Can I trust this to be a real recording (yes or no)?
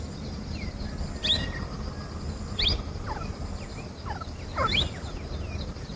yes